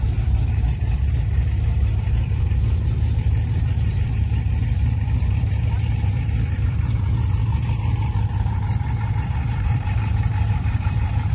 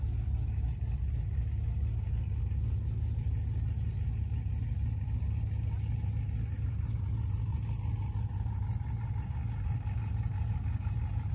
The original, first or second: second